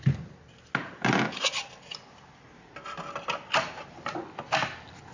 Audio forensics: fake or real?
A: real